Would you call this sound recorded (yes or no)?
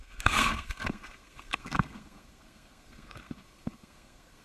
no